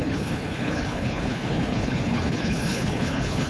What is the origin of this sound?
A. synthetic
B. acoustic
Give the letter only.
A